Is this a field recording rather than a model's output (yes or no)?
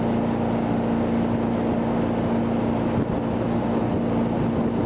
yes